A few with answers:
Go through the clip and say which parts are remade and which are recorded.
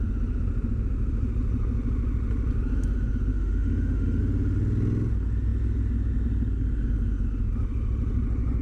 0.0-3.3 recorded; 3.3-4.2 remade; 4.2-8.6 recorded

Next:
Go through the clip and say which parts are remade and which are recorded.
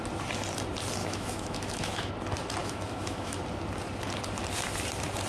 0.0-1.0 recorded; 1.0-2.1 remade; 2.1-2.6 recorded; 2.6-3.4 remade; 3.4-5.3 recorded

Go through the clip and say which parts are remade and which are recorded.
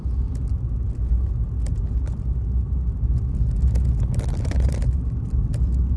0.0-6.0 recorded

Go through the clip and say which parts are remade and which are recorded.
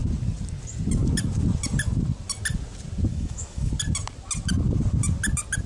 0.0-3.1 recorded; 3.1-3.7 remade; 3.7-5.7 recorded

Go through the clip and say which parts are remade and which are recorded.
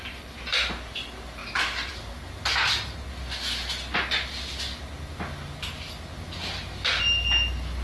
0.0-7.8 recorded